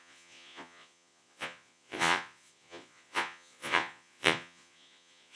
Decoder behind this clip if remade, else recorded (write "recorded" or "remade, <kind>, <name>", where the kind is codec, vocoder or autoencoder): remade, vocoder, Vocos